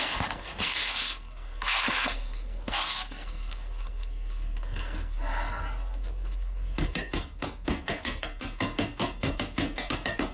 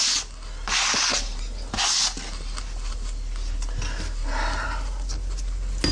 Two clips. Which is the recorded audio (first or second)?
second